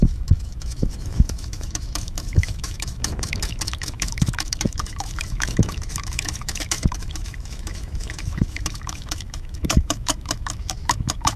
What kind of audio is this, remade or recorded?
remade